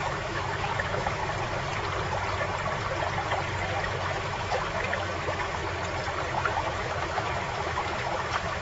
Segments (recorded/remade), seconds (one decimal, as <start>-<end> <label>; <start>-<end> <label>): 0.0-1.2 remade; 1.2-3.8 recorded; 3.8-5.6 remade; 5.6-6.3 recorded; 6.3-8.6 remade